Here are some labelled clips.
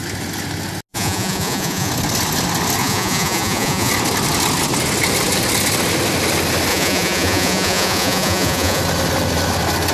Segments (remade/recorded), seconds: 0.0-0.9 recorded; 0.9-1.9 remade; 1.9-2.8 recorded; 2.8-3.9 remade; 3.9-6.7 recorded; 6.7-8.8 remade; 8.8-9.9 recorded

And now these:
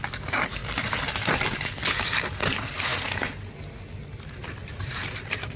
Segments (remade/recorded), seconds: 0.0-2.9 remade; 2.9-4.3 recorded; 4.3-5.6 remade

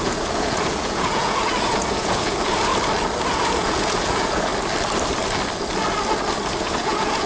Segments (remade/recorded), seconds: 0.0-2.7 remade; 2.7-3.3 recorded; 3.3-4.5 remade; 4.5-6.6 recorded; 6.6-7.3 remade

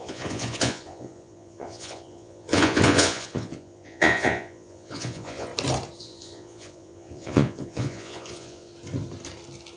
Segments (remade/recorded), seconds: 0.0-5.5 remade; 5.5-6.0 recorded; 6.0-8.7 remade; 8.7-9.8 recorded

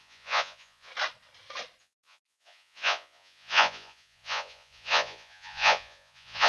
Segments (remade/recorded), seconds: 0.0-0.9 remade; 0.9-1.8 recorded; 1.8-6.5 remade

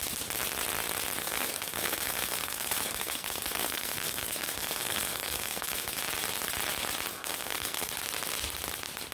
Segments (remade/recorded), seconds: 0.0-1.2 recorded; 1.2-6.0 remade; 6.0-7.1 recorded; 7.1-7.9 remade; 7.9-9.1 recorded